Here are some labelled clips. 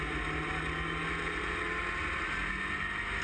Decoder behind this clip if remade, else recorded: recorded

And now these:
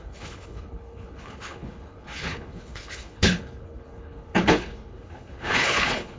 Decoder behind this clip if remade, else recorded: remade, codec, HILCodec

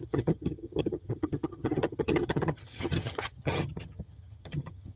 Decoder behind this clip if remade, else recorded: remade, vocoder, HiFi-GAN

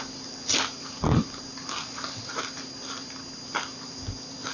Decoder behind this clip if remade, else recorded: recorded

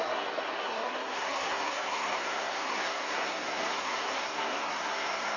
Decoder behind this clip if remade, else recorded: remade, codec, SNAC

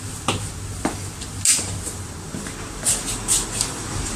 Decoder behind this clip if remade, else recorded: recorded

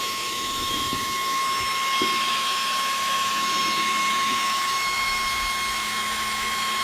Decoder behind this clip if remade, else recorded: remade, autoencoder, DAC-VAE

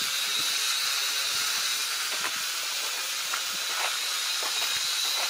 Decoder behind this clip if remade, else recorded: recorded